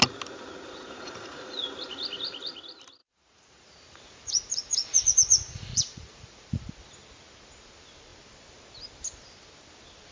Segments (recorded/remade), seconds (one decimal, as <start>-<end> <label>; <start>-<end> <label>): 0.0-0.6 recorded; 0.6-1.7 remade; 1.7-3.0 recorded; 3.0-6.6 remade; 6.6-10.1 recorded